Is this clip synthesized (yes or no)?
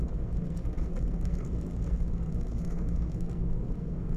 yes